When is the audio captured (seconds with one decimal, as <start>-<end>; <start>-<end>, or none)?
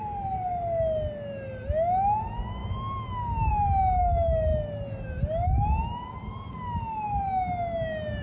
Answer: 0.0-8.2